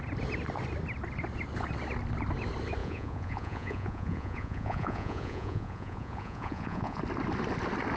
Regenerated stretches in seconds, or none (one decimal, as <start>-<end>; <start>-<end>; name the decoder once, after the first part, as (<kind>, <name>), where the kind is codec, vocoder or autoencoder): 2.8-7.0 (vocoder, Vocos)